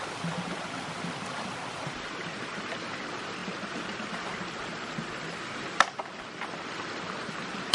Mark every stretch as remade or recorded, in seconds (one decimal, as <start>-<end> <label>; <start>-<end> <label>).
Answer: 0.0-3.4 remade; 3.4-7.3 recorded; 7.3-7.7 remade